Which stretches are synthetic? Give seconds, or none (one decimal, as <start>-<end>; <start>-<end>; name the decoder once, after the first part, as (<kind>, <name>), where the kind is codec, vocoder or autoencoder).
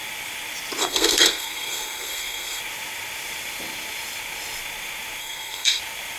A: 0.8-2.6 (codec, SNAC); 5.2-5.8